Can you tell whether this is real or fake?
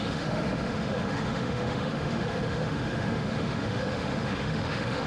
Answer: fake